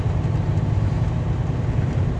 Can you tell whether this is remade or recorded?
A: recorded